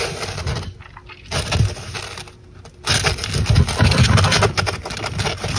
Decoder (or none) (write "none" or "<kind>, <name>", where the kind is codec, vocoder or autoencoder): none